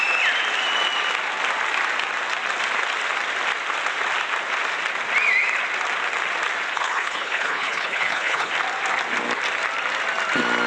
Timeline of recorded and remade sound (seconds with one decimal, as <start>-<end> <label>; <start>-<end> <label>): 0.0-6.7 recorded; 6.7-8.5 remade; 8.5-10.7 recorded